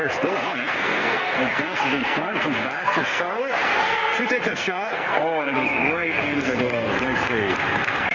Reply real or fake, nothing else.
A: fake